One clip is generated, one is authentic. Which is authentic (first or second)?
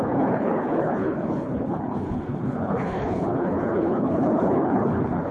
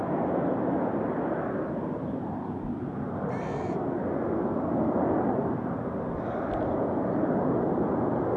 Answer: second